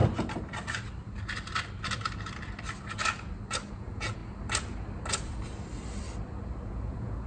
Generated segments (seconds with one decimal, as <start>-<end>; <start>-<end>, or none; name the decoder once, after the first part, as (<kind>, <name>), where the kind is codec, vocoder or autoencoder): 3.7-4.2 (vocoder, Vocos); 6.6-7.3